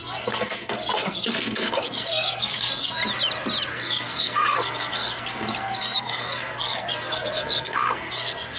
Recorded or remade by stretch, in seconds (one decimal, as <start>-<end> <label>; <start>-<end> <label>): 0.0-3.0 remade; 3.0-3.7 recorded; 3.7-8.6 remade